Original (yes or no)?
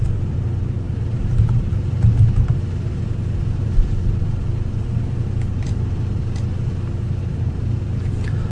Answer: no